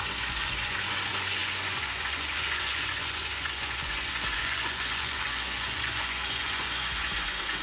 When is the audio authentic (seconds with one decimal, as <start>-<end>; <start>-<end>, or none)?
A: none